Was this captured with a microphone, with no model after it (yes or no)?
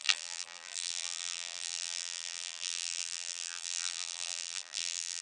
no